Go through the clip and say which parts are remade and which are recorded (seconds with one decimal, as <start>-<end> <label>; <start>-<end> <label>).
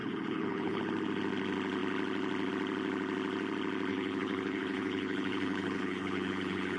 0.0-0.8 remade; 0.8-3.9 recorded; 3.9-6.8 remade